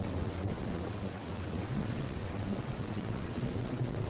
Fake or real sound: fake